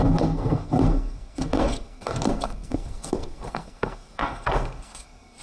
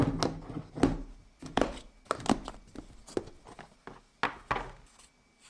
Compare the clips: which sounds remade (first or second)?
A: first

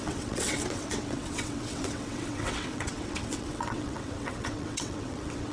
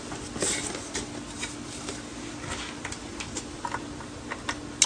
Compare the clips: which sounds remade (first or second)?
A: first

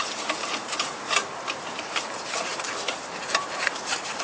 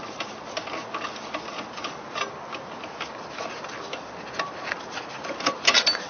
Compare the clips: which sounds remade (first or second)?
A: first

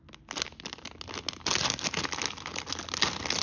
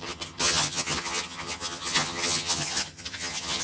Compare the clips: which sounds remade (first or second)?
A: second